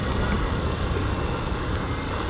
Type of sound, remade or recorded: recorded